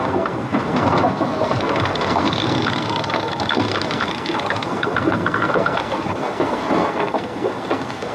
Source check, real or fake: fake